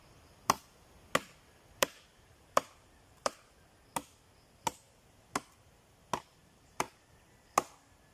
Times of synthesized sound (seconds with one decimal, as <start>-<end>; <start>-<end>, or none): 1.8-3.3; 6.4-7.1